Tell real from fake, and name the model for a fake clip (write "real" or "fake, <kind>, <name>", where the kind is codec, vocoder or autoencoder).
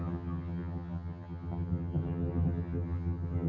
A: fake, vocoder, HiFi-GAN